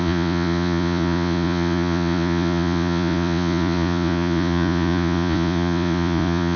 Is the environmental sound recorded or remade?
remade